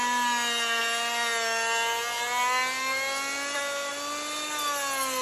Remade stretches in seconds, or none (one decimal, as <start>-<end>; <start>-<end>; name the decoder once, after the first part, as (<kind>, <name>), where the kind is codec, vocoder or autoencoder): none